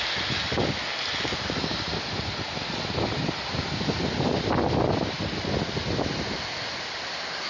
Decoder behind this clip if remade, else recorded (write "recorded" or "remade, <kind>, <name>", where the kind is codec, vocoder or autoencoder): recorded